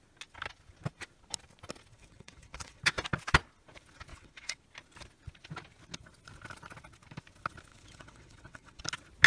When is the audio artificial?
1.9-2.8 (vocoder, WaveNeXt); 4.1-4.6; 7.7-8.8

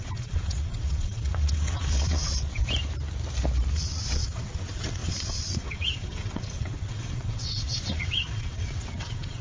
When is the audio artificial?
0.0-2.6 (vocoder, WaveNeXt); 3.7-9.4